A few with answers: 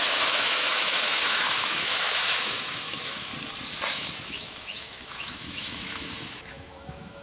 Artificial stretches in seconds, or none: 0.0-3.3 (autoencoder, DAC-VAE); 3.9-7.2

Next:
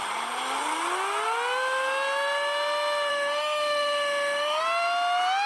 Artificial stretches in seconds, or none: 3.1-4.6 (autoencoder, DAC-VAE)

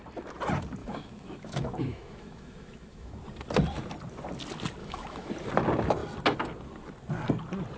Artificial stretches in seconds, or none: 0.8-3.2 (autoencoder, DAC-VAE); 4.8-5.3